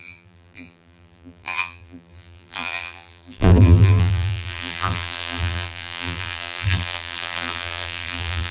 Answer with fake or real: fake